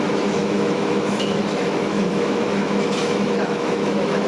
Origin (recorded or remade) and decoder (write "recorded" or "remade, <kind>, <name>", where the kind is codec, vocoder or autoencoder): remade, autoencoder, DAC-VAE